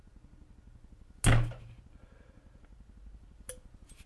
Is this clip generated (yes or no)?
no